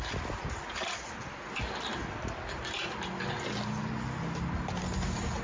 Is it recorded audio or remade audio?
recorded